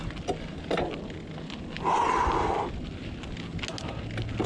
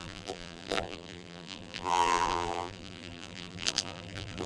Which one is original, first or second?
first